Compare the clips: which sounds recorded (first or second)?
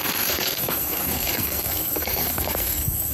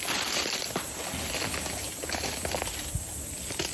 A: second